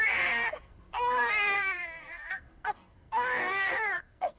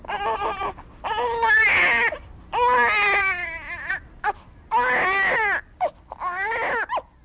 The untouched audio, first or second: second